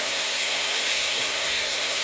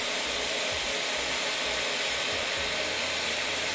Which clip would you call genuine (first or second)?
second